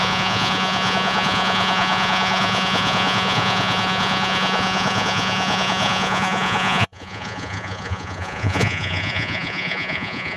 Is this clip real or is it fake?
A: fake